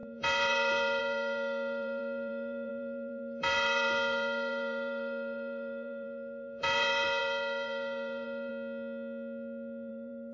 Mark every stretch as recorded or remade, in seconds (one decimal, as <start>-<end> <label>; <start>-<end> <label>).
0.0-8.5 remade; 8.5-9.9 recorded; 9.9-10.3 remade

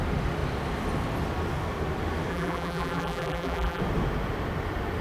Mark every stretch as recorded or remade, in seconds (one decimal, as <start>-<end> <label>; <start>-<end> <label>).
0.0-2.3 recorded; 2.3-3.8 remade; 3.8-5.0 recorded

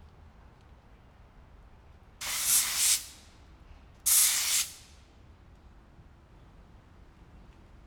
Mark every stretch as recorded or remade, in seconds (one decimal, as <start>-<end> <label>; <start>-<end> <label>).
0.0-7.9 recorded

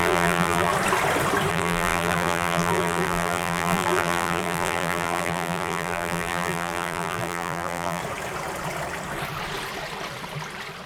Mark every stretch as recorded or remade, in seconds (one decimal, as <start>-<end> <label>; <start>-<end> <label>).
0.0-0.7 remade; 0.7-1.5 recorded; 1.5-8.0 remade; 8.0-10.9 recorded

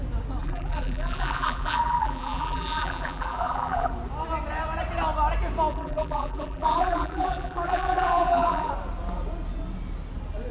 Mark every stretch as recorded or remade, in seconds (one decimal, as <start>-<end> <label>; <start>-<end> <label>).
0.0-0.4 recorded; 0.4-3.9 remade; 3.9-5.7 recorded; 5.7-8.7 remade; 8.7-10.5 recorded

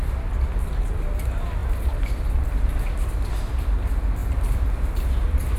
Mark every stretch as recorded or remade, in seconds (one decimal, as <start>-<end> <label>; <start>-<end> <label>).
0.0-4.2 recorded; 4.2-5.6 remade